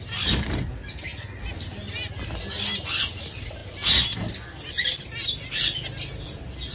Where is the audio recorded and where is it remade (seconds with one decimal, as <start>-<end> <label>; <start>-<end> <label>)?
0.0-6.7 recorded